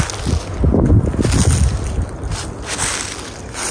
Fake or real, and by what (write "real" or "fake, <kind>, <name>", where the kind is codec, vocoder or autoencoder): real